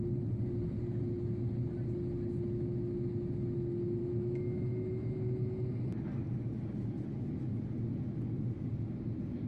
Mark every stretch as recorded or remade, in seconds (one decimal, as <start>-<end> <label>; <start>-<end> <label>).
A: 0.0-4.0 recorded; 4.0-5.6 remade; 5.6-9.5 recorded